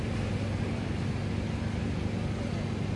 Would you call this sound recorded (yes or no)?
yes